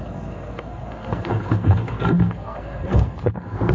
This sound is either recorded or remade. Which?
remade